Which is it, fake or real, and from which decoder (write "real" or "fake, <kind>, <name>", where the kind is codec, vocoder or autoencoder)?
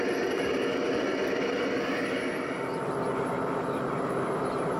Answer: real